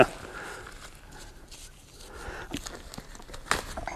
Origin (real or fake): real